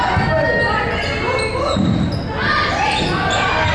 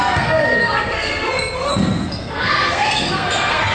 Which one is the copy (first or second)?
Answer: second